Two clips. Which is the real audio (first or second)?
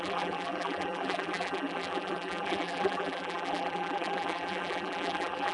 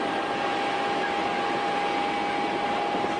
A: second